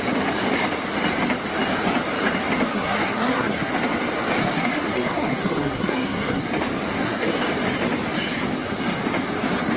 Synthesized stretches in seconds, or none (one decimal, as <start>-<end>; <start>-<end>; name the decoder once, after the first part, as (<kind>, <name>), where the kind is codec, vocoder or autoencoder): 2.7-3.7 (codec, SNAC); 4.4-6.5; 6.9-7.4